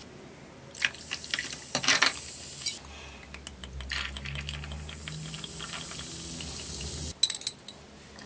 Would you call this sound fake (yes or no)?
no